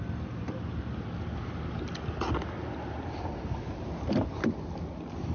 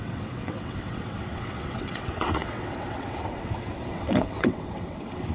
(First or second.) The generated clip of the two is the second